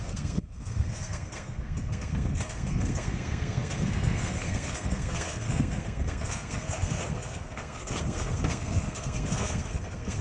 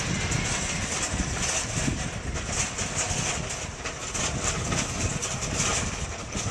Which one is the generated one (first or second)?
first